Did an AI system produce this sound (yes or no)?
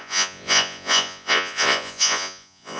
yes